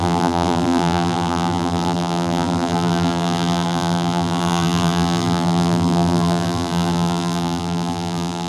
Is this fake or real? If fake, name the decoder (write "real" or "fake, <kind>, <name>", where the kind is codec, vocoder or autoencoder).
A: fake, vocoder, BigVGAN v2